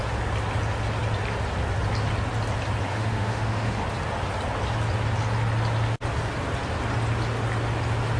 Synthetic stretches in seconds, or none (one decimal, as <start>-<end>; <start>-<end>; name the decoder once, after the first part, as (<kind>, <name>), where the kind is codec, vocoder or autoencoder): 2.9-3.8 (autoencoder, DAC-VAE)

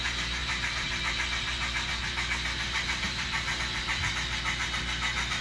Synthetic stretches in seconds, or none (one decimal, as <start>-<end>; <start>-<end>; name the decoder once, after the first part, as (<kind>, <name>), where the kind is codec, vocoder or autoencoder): 0.4-3.6 (vocoder, BigVGAN v2)

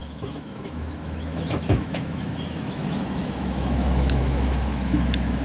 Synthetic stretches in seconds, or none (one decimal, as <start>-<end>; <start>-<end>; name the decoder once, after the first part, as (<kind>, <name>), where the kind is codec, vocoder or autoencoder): 0.0-5.4 (autoencoder, DAC-VAE)

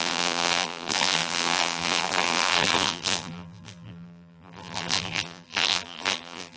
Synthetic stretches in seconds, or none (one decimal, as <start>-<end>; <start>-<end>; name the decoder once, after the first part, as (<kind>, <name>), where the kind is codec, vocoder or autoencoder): 0.0-6.6 (vocoder, BigVGAN v2)

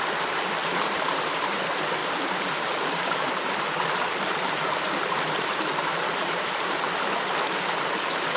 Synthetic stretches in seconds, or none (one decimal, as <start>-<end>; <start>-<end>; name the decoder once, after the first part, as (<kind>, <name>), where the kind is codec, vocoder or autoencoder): 0.6-1.6 (vocoder, BigVGAN v2); 2.0-6.9

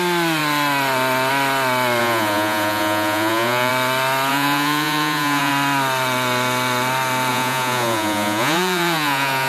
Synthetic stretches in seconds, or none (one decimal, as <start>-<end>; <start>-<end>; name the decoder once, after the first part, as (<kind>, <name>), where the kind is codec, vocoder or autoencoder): 2.0-3.7 (vocoder, Vocos); 4.3-5.5; 7.3-9.5

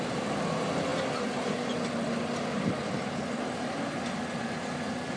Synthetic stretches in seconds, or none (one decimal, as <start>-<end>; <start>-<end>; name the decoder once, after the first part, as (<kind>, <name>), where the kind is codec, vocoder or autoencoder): none